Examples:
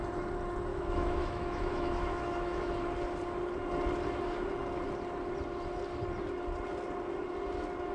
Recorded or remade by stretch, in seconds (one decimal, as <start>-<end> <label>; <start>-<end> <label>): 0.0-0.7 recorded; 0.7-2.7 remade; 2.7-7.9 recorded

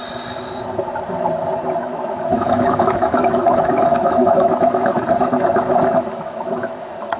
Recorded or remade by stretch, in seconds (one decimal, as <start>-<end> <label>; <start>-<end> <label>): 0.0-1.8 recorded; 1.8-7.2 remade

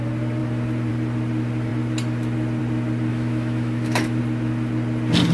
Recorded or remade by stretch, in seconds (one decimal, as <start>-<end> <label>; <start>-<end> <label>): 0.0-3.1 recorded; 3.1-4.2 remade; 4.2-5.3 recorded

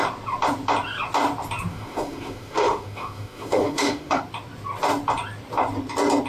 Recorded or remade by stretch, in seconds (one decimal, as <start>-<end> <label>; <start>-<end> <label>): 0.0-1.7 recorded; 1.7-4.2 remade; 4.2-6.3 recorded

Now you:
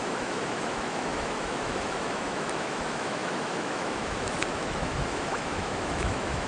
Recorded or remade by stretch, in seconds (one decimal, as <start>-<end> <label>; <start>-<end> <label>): 0.0-6.5 remade